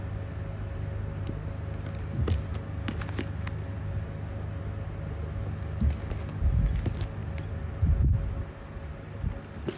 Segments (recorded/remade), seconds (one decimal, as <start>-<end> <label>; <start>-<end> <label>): 0.0-9.8 recorded